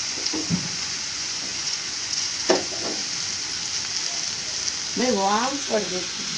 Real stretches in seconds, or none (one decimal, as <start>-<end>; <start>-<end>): 3.0-5.0